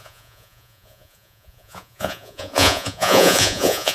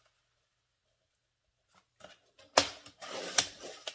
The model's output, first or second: first